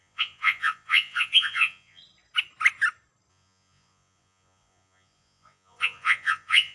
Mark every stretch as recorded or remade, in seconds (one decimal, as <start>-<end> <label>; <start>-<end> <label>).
0.0-2.0 remade; 2.0-3.3 recorded; 3.3-6.7 remade